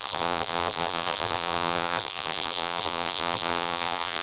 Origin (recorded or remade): remade